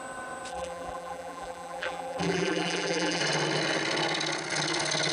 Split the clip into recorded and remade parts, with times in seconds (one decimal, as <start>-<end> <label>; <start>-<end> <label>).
0.0-0.5 recorded; 0.5-3.2 remade; 3.2-5.1 recorded